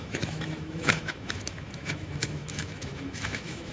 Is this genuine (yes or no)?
no